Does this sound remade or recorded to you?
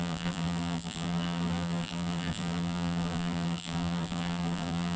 remade